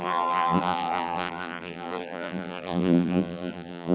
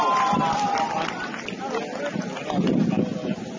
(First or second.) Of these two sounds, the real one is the second